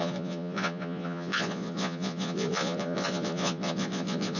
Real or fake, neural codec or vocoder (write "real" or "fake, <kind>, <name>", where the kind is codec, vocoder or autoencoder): fake, vocoder, Vocos